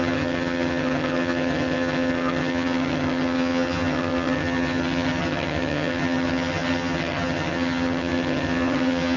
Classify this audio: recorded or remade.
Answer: remade